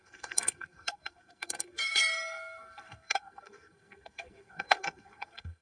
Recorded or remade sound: remade